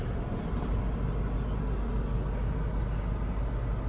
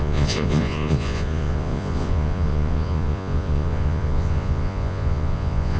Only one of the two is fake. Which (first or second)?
second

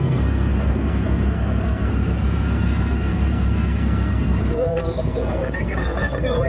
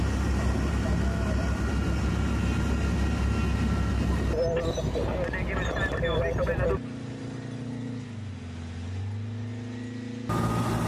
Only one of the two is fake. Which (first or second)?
first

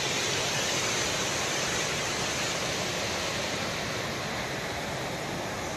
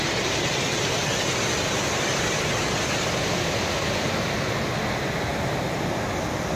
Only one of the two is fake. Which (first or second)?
first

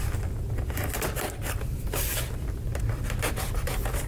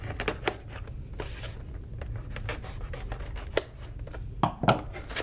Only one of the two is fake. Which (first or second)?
first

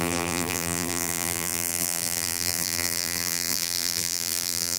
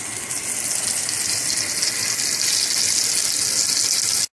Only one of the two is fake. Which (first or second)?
first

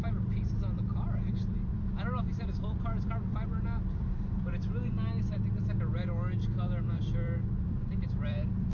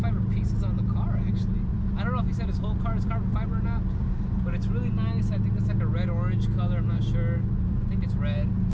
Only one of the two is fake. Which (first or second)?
first